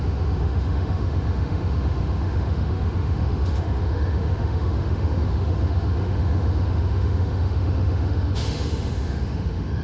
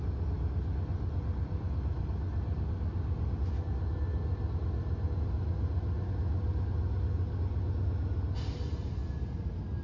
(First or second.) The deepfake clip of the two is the first